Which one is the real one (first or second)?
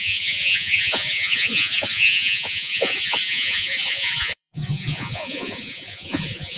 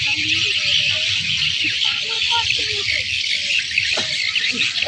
second